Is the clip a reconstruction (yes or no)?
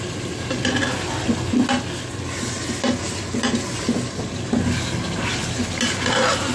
no